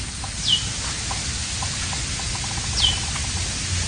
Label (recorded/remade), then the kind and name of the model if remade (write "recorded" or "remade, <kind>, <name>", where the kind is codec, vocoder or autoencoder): recorded